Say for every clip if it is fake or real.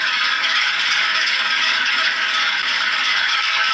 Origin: fake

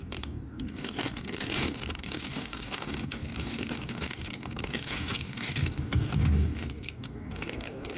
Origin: fake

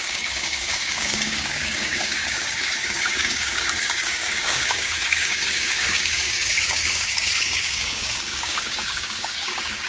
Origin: fake